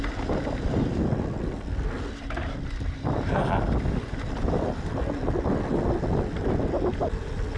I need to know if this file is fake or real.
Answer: real